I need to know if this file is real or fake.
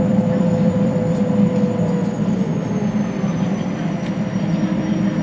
fake